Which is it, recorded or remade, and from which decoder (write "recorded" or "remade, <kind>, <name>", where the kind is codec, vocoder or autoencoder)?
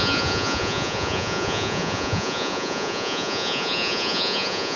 remade, vocoder, Vocos